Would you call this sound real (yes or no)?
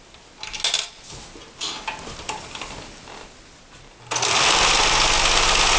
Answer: yes